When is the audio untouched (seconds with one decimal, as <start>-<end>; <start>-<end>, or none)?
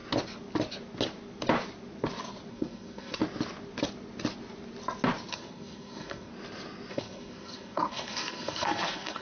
0.0-2.5; 3.2-5.3; 6.3-6.9